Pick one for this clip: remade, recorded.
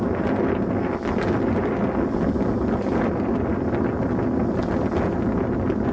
recorded